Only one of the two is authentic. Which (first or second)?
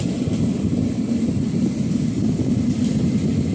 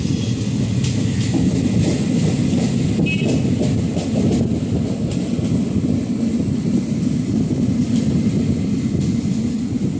second